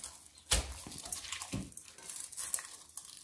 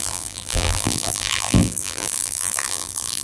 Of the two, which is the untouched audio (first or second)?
first